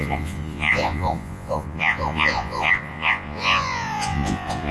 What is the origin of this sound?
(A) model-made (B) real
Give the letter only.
A